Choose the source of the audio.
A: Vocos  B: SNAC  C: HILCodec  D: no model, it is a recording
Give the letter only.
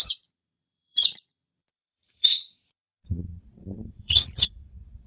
A